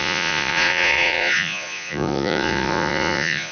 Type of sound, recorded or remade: remade